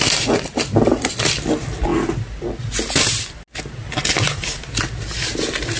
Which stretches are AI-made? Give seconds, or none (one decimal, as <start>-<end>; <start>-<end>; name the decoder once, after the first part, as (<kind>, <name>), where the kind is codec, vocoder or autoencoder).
none